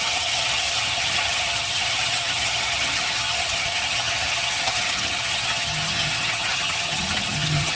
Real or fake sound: fake